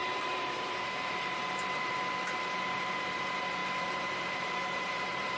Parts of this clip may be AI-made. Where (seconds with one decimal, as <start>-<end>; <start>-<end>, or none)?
0.0-1.9; 3.6-5.4